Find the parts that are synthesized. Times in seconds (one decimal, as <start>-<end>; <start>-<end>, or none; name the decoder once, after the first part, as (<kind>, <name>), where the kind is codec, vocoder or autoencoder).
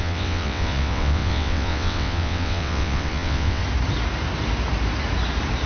0.0-3.6 (vocoder, WaveNeXt)